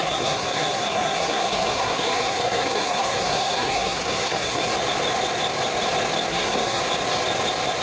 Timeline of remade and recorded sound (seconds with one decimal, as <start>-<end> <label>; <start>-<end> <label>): 0.0-4.7 remade; 4.7-6.3 recorded; 6.3-6.8 remade; 6.8-7.8 recorded